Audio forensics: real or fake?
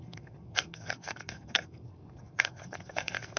fake